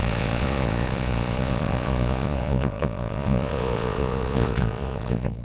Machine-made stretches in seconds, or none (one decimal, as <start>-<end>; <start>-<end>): 0.0-5.4